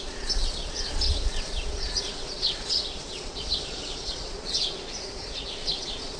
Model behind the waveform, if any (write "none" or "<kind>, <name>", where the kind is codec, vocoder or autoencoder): vocoder, Vocos